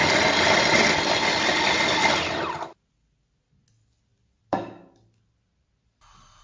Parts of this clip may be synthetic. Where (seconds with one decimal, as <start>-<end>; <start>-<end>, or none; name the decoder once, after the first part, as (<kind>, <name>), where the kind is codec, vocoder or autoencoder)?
none